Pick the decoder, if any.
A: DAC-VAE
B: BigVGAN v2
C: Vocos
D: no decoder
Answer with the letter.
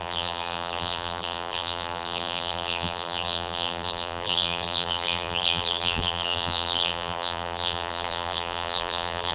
B